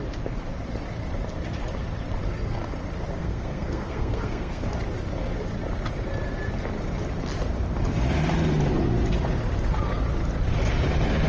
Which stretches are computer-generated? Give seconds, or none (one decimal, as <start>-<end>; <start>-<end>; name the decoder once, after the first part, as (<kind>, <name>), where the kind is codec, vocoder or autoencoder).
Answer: 3.2-4.7 (codec, SNAC)